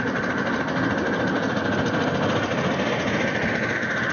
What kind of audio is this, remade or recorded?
recorded